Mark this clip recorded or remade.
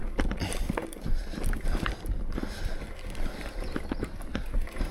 remade